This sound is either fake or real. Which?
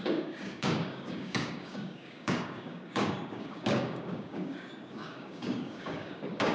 fake